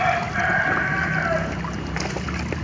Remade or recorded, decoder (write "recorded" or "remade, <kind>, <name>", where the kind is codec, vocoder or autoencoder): recorded